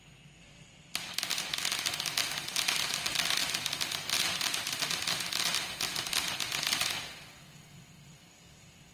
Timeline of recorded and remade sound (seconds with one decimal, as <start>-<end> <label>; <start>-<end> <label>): 0.0-8.9 recorded